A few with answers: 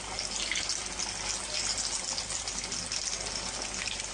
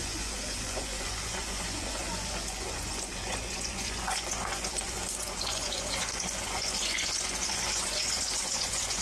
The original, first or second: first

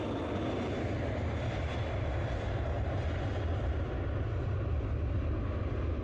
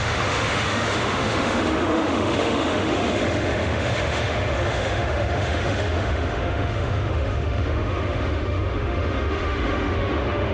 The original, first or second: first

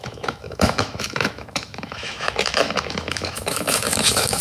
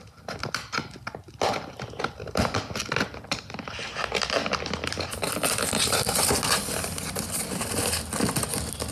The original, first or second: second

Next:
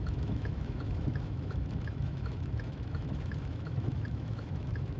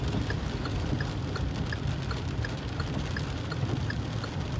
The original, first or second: second